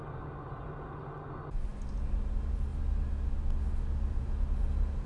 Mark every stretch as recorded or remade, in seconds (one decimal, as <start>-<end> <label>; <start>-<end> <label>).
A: 0.0-5.1 recorded